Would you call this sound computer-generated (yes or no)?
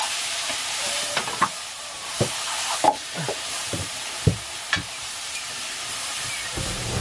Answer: yes